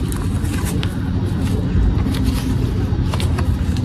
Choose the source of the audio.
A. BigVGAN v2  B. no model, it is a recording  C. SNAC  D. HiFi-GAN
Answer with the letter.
B